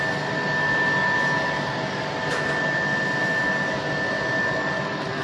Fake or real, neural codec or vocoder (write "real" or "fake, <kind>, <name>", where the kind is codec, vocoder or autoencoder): real